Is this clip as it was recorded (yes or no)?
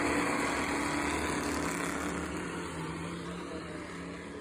yes